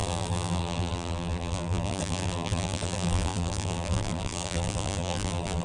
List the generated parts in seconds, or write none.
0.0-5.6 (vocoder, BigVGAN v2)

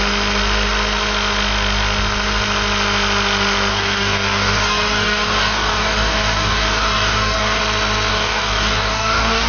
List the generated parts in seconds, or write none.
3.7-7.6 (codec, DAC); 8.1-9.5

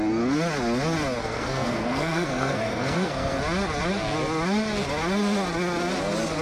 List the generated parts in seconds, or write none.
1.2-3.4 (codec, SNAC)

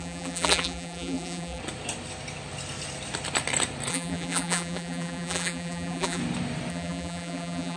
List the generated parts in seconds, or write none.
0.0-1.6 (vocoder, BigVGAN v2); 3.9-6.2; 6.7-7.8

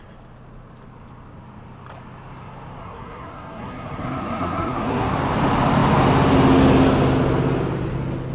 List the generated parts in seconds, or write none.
2.8-5.2 (codec, SNAC)

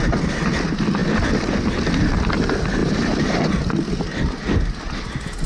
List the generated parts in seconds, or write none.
2.8-3.4 (vocoder, BigVGAN v2)

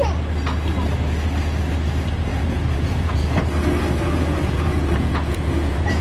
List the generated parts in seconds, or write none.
2.3-3.4 (vocoder, Vocos); 4.0-6.0